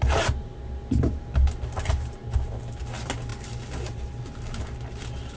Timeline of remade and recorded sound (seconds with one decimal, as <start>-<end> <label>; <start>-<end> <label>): 0.0-5.4 recorded